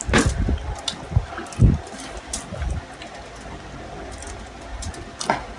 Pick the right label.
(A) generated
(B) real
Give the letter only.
B